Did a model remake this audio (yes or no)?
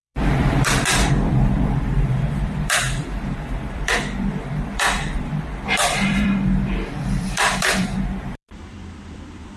yes